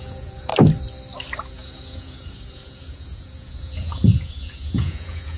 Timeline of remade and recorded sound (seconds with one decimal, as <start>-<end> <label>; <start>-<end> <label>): 0.0-0.5 remade; 0.5-1.5 recorded; 1.5-5.4 remade